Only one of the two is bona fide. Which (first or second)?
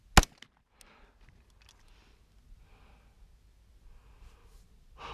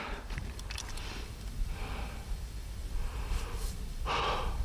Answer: first